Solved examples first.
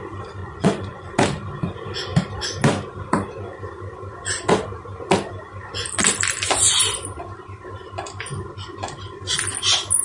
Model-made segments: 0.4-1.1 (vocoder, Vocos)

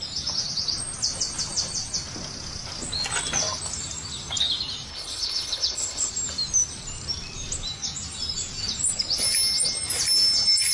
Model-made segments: 4.9-6.1 (codec, HILCodec)

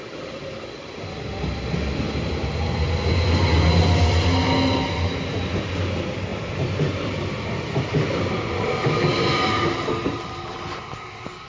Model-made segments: none

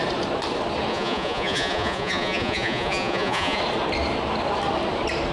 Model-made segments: 0.9-3.6 (vocoder, Vocos)

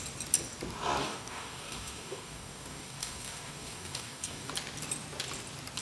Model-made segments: 1.0-4.5 (codec, DAC)

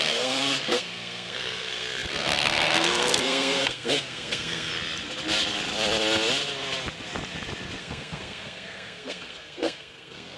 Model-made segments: 0.0-4.7 (codec, SNAC); 7.8-10.4

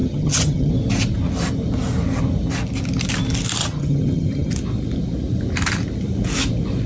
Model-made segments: 0.0-0.7 (vocoder, HiFi-GAN); 3.6-4.5